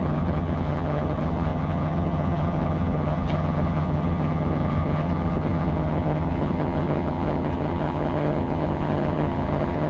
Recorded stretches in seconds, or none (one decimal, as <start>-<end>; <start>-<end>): none